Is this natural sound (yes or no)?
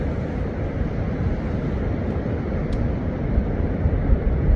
yes